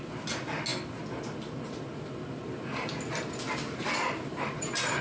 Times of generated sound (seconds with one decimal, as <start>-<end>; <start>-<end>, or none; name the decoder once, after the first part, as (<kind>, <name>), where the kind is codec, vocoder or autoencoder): 3.6-5.0 (vocoder, BigVGAN v2)